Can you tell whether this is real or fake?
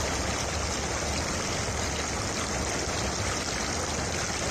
real